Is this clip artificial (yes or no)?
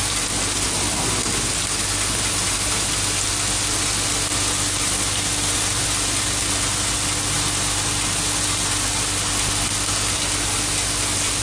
no